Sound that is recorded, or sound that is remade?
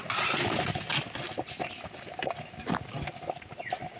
recorded